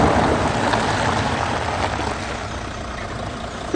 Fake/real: real